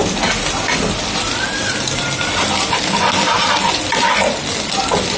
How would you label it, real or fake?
real